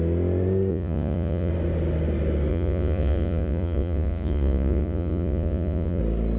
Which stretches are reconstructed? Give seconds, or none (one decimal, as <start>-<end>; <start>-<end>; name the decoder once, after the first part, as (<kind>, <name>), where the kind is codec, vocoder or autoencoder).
0.7-1.5 (vocoder, Vocos); 2.5-6.0